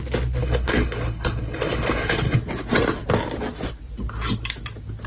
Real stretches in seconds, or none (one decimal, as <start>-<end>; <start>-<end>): 0.0-0.4; 2.4-5.1